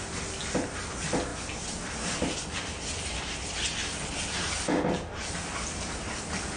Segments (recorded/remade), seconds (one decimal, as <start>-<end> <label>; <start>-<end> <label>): 0.0-6.6 recorded

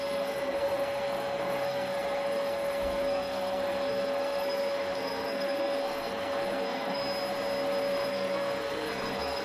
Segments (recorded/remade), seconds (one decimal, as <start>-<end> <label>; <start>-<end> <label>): 0.0-7.0 remade; 7.0-8.1 recorded; 8.1-9.4 remade